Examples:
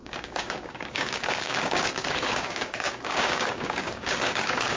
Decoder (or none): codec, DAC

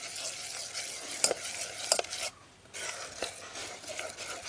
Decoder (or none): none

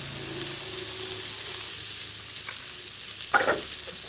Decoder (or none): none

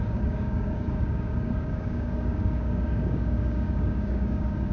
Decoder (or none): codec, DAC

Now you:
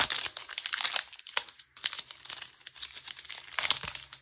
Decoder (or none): none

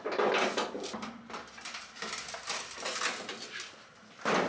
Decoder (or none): none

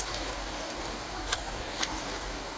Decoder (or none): codec, DAC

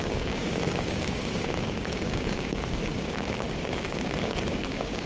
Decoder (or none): codec, DAC